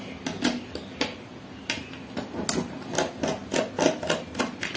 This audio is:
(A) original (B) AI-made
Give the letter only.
A